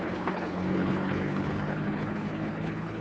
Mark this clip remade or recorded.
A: remade